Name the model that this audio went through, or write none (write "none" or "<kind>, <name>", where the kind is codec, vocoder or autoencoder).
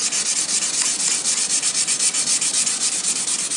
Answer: none